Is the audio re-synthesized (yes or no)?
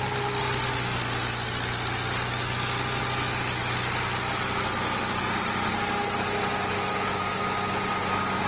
no